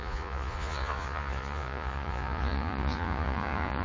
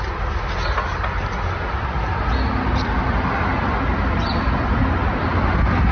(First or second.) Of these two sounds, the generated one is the first